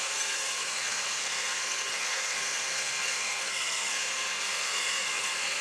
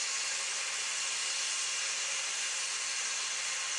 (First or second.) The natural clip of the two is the second